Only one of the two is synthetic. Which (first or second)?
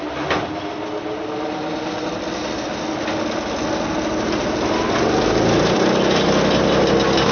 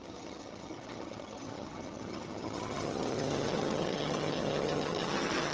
second